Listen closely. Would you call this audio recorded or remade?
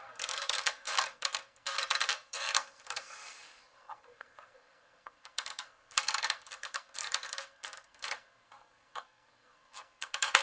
remade